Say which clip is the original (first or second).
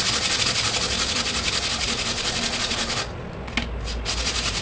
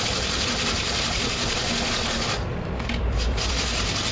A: first